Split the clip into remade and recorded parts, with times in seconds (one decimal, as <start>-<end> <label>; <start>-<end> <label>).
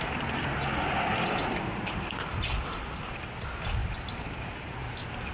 0.0-5.3 recorded